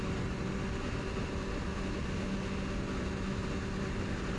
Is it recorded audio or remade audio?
recorded